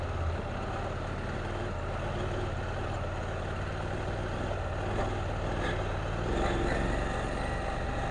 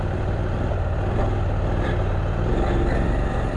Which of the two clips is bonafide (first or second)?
first